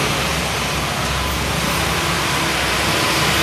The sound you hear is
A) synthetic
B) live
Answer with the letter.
B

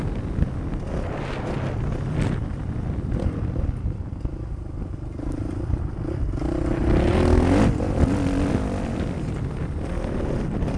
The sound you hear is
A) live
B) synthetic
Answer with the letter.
A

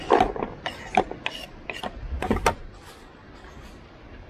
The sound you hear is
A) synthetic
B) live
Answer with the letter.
B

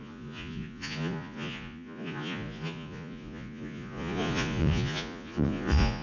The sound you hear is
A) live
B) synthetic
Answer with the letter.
B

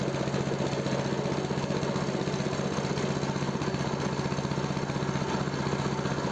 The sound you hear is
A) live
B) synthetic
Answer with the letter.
A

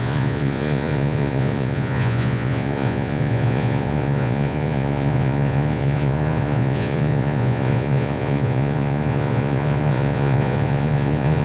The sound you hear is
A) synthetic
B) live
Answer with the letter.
A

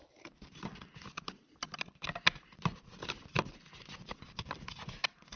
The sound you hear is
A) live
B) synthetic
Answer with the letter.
A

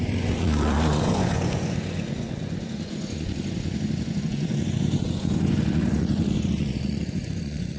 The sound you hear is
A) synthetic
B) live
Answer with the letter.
A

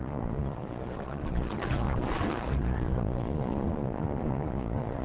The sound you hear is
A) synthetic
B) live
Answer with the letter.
A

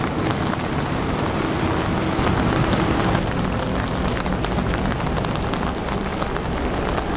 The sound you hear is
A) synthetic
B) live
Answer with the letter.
B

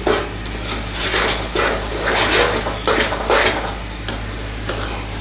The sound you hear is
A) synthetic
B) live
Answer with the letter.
B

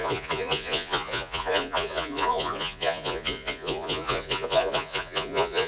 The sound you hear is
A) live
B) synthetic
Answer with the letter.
B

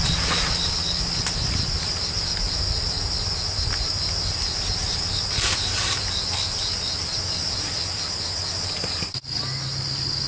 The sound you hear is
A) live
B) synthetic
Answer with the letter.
A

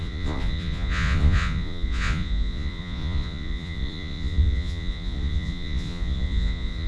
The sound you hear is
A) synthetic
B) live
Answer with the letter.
A